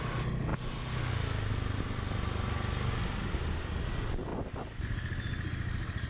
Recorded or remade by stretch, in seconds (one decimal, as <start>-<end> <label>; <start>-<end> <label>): 0.0-6.1 recorded